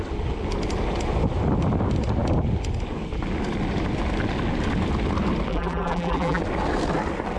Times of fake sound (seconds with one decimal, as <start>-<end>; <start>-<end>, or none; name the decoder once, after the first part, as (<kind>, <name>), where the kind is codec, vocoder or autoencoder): 5.5-6.4 (vocoder, BigVGAN v2)